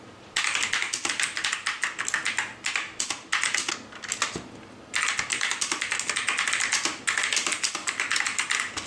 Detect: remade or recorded recorded